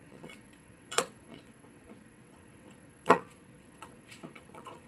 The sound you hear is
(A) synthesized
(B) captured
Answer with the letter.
A